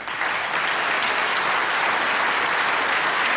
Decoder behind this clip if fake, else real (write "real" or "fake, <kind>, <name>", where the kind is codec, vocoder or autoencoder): real